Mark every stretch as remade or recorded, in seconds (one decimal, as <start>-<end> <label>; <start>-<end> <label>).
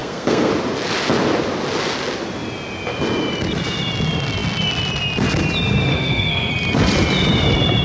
0.0-0.5 remade; 0.5-5.9 recorded; 5.9-6.5 remade; 6.5-7.8 recorded